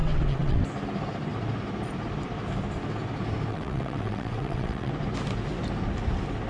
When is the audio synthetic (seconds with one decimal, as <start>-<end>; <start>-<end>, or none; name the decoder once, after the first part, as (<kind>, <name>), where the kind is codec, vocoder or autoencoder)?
0.0-0.6 (vocoder, WaveNeXt); 3.5-4.9